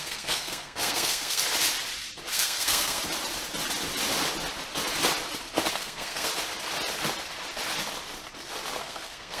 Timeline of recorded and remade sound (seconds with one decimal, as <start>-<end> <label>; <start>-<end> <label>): 0.0-1.4 remade; 1.4-2.3 recorded; 2.3-3.0 remade; 3.0-5.7 recorded; 5.7-6.3 remade; 6.3-8.8 recorded; 8.8-9.4 remade